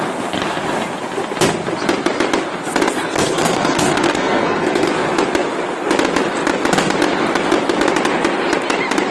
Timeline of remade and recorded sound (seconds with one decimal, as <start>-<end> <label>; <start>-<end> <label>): 0.0-3.0 recorded; 3.0-4.9 remade; 4.9-9.1 recorded